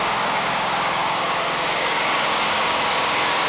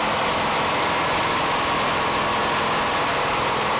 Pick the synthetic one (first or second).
first